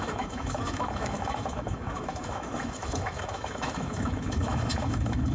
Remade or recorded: remade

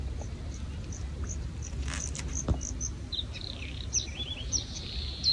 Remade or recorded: remade